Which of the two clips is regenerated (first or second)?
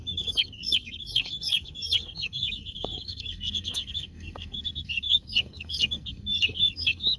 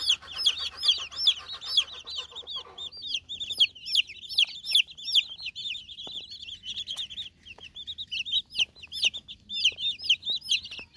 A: first